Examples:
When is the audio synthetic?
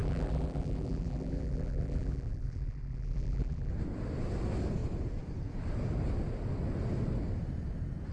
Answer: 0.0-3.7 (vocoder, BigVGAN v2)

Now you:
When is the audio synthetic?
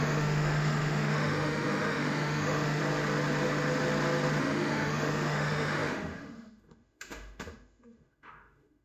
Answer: 0.0-2.8 (autoencoder, DAC-VAE); 4.4-8.8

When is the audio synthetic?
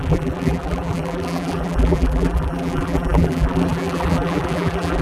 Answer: 0.0-5.0 (vocoder, BigVGAN v2)